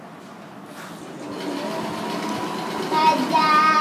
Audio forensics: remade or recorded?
recorded